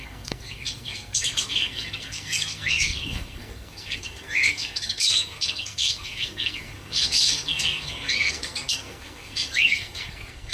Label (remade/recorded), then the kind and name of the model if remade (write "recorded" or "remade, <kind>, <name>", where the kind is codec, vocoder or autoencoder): remade, codec, SNAC